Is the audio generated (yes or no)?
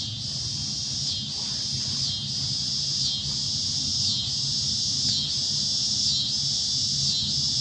no